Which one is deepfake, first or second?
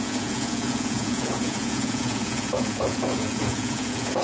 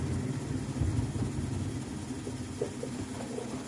first